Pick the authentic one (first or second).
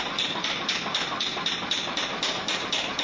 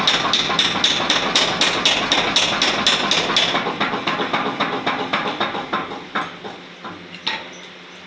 second